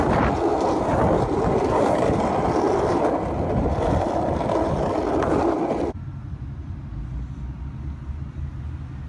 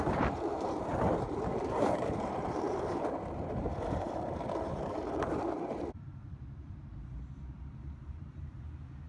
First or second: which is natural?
first